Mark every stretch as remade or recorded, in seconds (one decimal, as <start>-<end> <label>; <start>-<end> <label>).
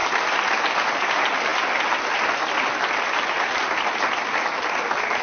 0.0-5.2 recorded